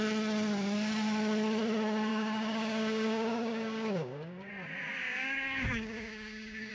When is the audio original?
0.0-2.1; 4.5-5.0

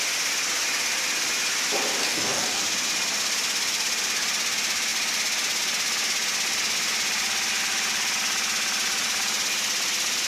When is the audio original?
0.0-2.0; 2.6-10.3

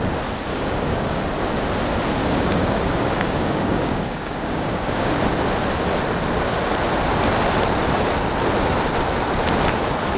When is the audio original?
0.0-0.5; 1.2-2.2; 5.2-10.2

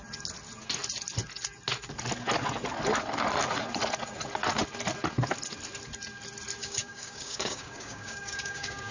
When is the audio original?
0.0-6.6

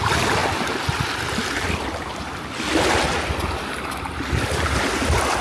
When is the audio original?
0.0-5.4

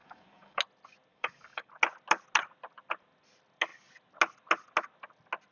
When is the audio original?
0.6-1.1; 1.7-5.5